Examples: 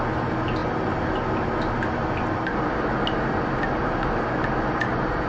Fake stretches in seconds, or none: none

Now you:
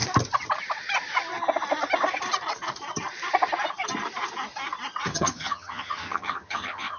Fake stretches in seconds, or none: 5.1-7.0 (vocoder, HiFi-GAN)

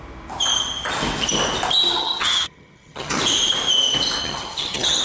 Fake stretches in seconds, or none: 2.0-3.2 (vocoder, HiFi-GAN); 4.2-5.0

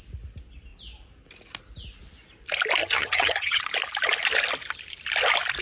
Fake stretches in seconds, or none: 2.8-3.6 (vocoder, HiFi-GAN)

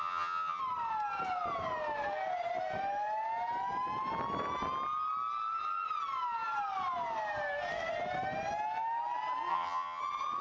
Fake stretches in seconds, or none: 0.0-0.6 (vocoder, HiFi-GAN); 9.5-10.0

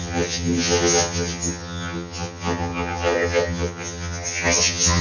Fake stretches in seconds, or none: 0.0-5.0 (vocoder, HiFi-GAN)